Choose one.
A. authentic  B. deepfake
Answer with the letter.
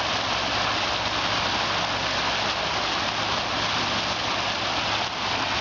A